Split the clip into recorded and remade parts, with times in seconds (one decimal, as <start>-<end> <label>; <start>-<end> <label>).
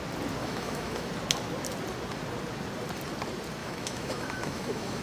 0.0-0.4 recorded; 0.4-1.1 remade; 1.1-3.6 recorded; 3.6-5.0 remade